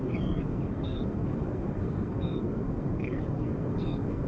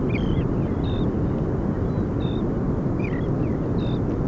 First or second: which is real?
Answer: second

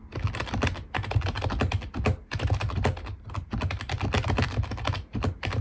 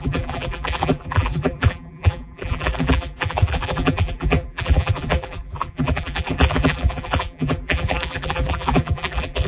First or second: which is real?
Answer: first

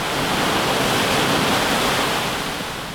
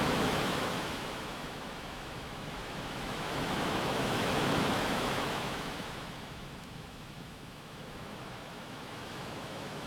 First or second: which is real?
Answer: first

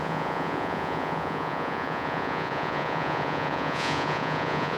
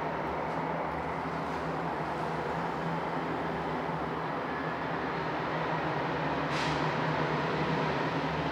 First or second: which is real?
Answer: second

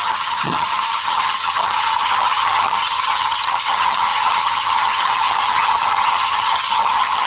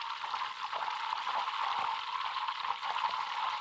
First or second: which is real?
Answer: second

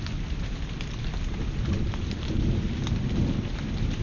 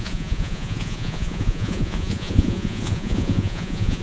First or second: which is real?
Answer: first